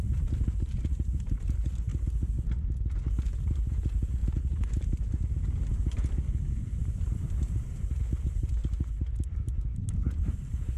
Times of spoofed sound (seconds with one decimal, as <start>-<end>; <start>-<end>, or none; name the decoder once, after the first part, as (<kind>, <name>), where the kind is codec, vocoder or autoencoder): 0.0-1.9 (vocoder, BigVGAN v2); 3.1-4.2; 6.4-8.6; 9.3-10.8